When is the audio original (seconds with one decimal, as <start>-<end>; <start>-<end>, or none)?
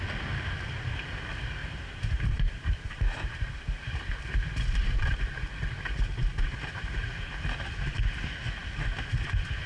0.0-1.6; 5.6-9.7